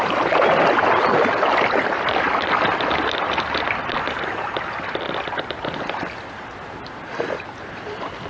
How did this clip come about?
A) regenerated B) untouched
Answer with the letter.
B